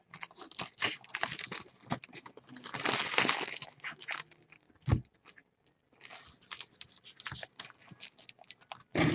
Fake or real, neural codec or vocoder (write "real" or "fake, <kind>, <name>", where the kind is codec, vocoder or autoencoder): real